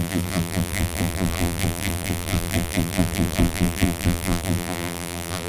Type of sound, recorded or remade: remade